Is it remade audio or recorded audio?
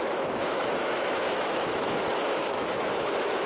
remade